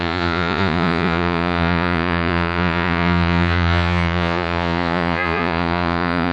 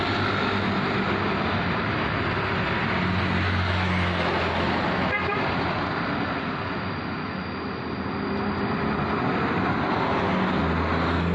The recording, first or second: second